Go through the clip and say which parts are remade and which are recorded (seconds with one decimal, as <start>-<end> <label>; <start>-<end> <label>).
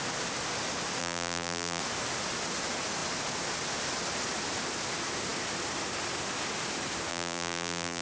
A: 0.0-1.0 recorded; 1.0-1.8 remade; 1.8-7.1 recorded; 7.1-8.0 remade